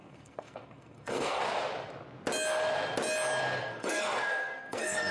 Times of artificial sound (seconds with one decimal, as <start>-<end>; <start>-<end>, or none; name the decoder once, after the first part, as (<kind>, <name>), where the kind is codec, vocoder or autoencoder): 0.0-1.4 (codec, SNAC); 3.6-5.1